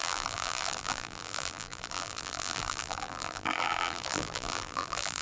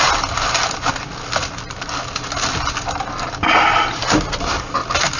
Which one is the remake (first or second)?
first